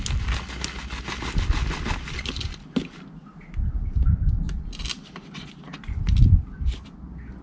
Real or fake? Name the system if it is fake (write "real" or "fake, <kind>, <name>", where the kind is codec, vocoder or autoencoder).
real